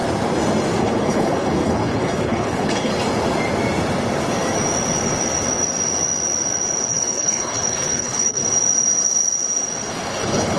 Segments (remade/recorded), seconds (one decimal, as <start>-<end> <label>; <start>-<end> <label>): 0.0-0.8 recorded; 0.8-2.9 remade; 2.9-6.9 recorded; 6.9-8.4 remade; 8.4-9.9 recorded; 9.9-10.6 remade

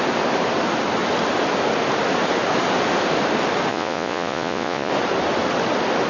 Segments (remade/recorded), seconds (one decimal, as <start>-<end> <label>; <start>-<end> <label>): 0.0-3.7 recorded; 3.7-4.9 remade; 4.9-6.1 recorded

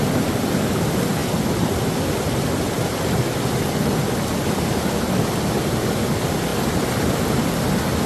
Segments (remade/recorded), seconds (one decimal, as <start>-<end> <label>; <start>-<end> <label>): 0.0-8.1 recorded

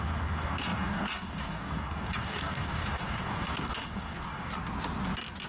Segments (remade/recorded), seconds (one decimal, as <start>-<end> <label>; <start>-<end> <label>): 0.0-4.6 remade; 4.6-5.5 recorded

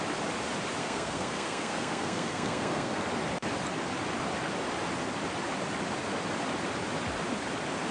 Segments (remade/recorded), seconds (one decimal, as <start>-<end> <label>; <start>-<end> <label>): 0.0-0.8 recorded; 0.8-3.0 remade; 3.0-7.9 recorded

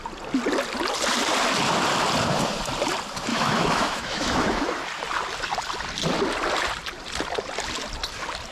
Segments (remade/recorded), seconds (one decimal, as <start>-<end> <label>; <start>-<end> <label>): 0.0-3.3 recorded; 3.3-4.6 remade; 4.6-8.5 recorded